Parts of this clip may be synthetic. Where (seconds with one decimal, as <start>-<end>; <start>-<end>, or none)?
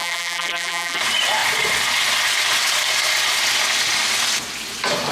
0.0-1.0